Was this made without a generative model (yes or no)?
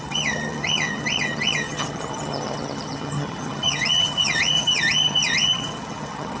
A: no